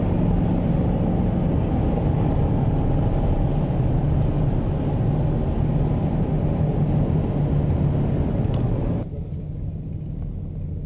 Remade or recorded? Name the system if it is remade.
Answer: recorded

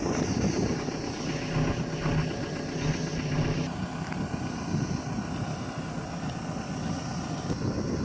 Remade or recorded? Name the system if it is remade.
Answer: recorded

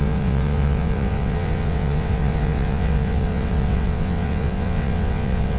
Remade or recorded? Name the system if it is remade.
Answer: remade, vocoder, WaveNeXt